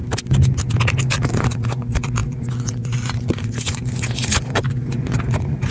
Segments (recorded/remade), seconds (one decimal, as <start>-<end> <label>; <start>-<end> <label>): 0.0-1.2 recorded; 1.2-5.7 remade